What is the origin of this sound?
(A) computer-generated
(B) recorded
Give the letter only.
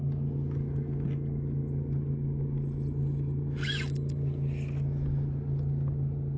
B